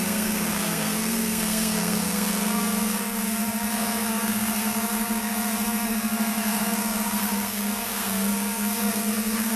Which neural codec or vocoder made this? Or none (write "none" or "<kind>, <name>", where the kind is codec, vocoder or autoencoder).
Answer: codec, SNAC